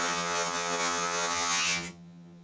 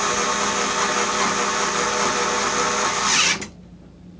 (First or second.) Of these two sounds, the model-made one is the first